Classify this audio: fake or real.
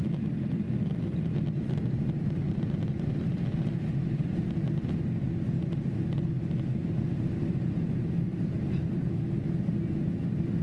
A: real